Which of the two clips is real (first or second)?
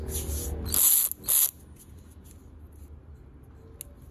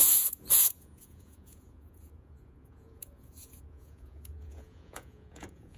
first